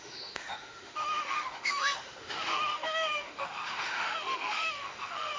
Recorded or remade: remade